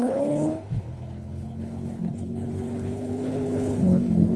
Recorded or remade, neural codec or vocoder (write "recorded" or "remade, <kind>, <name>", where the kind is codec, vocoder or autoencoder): remade, codec, HILCodec